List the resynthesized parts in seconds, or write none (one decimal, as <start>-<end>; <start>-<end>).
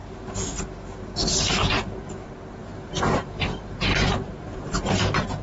2.6-5.0